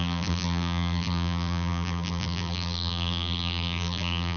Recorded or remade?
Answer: remade